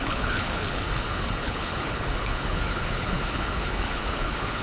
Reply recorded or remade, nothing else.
remade